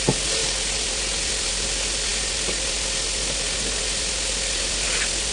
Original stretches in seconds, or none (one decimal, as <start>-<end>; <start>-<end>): 0.0-5.3